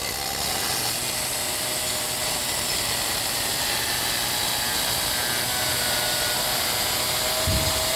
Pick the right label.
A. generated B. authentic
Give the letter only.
B